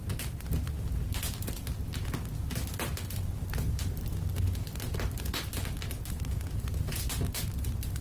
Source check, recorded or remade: recorded